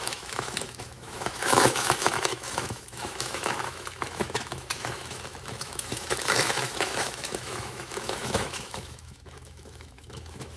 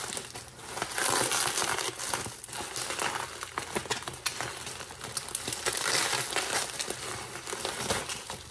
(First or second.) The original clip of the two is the second